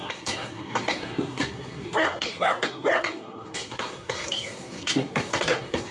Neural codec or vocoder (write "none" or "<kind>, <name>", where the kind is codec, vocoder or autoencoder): codec, SNAC